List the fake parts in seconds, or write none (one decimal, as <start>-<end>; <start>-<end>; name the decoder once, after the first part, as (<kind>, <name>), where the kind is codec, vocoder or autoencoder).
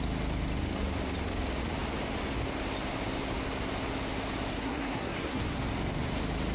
4.5-5.6 (codec, SNAC)